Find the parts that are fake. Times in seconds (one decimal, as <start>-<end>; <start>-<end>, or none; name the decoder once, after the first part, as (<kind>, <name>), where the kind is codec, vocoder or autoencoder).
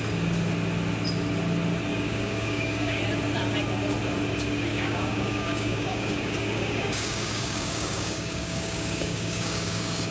1.9-3.0 (codec, DAC); 4.7-10.1